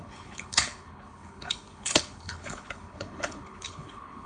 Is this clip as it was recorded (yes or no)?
no